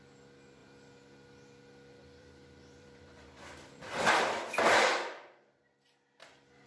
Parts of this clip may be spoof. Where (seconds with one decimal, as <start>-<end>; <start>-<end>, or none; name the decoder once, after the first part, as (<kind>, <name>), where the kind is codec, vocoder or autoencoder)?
0.6-4.6 (vocoder, BigVGAN v2)